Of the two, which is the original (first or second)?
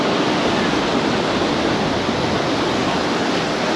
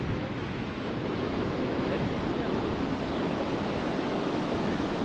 first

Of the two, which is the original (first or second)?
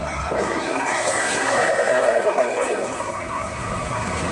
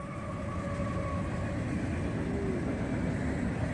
second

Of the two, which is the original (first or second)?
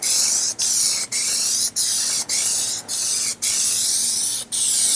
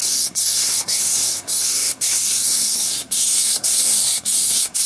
first